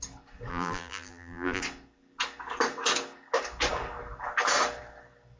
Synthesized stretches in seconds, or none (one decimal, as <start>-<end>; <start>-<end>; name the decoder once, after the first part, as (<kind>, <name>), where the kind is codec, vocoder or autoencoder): 0.5-1.6 (vocoder, BigVGAN v2)